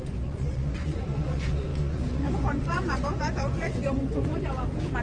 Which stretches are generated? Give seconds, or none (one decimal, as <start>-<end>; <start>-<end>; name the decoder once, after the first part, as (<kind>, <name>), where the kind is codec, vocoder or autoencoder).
0.0-4.3 (vocoder, Vocos)

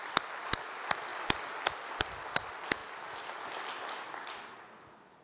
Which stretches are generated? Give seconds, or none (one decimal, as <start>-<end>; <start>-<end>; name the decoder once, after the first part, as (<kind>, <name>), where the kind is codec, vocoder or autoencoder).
none

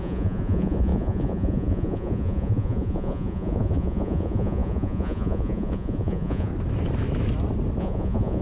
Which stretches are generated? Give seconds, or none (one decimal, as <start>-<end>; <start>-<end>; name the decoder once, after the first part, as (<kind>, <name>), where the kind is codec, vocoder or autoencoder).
0.0-6.5 (vocoder, Vocos); 7.8-8.4

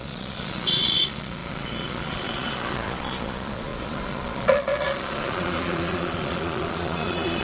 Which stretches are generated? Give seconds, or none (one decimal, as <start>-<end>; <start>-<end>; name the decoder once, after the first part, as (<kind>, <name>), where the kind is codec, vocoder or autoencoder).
0.0-7.4 (vocoder, Vocos)

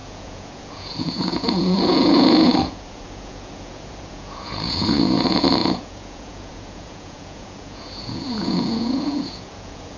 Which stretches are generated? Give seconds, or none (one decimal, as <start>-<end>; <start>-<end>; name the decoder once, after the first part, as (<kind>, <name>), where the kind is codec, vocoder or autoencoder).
0.0-10.0 (vocoder, Vocos)

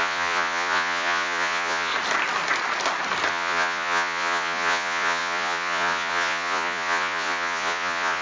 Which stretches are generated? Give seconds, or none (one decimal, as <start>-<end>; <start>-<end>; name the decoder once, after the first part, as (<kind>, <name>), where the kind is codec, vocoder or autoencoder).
0.0-1.9 (vocoder, Vocos); 3.3-8.2

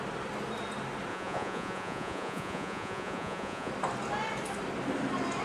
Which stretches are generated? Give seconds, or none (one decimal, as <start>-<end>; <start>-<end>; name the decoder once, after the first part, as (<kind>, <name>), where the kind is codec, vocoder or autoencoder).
1.1-3.7 (vocoder, Vocos)

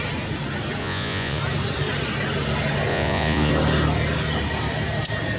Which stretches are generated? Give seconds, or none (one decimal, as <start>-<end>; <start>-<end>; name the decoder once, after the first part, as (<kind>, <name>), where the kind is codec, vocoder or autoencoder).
0.8-1.4 (vocoder, Vocos); 2.9-3.5